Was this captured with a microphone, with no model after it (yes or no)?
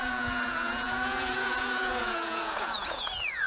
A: no